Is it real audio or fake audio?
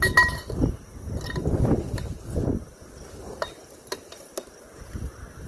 real